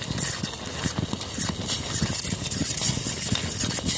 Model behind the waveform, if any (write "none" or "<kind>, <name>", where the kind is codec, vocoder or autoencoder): none